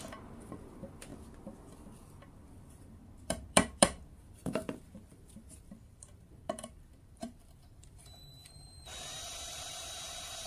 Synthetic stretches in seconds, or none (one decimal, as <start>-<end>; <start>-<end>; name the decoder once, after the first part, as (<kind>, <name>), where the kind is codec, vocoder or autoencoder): 0.0-1.1 (vocoder, BigVGAN v2); 2.7-10.5